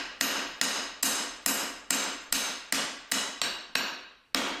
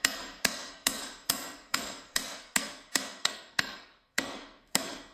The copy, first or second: second